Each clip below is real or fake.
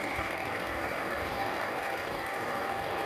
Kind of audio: fake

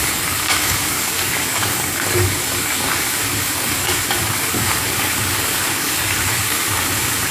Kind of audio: fake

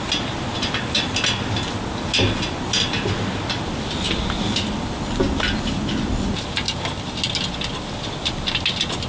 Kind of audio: real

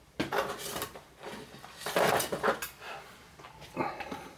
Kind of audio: real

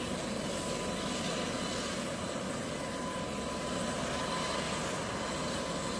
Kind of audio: real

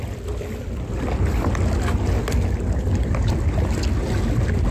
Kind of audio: real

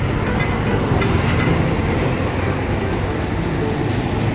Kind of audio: real